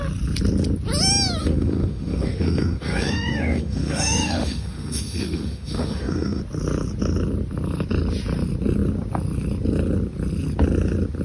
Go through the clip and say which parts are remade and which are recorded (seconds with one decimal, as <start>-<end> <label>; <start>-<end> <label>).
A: 0.0-1.4 recorded; 1.4-6.4 remade; 6.4-11.2 recorded